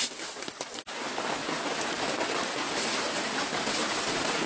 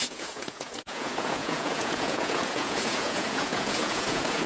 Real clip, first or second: first